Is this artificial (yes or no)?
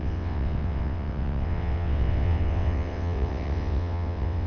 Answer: yes